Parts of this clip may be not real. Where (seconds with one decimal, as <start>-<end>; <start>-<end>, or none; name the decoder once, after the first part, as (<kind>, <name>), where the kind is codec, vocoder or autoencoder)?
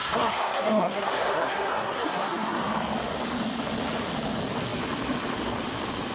0.0-2.7 (codec, SNAC)